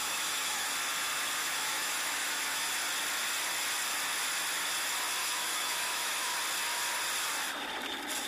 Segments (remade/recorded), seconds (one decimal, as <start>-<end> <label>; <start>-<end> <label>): 0.0-0.7 remade; 0.7-1.4 recorded; 1.4-2.7 remade; 2.7-5.2 recorded; 5.2-6.3 remade; 6.3-8.3 recorded